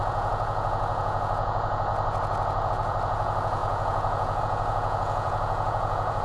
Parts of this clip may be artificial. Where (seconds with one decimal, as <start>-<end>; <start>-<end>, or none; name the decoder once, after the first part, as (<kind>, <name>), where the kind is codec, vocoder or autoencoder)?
0.0-6.2 (vocoder, Vocos)